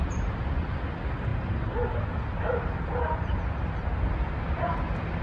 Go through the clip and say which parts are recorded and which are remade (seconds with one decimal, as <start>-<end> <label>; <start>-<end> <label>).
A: 0.0-1.3 recorded; 1.3-2.0 remade; 2.0-2.9 recorded; 2.9-3.9 remade; 3.9-5.2 recorded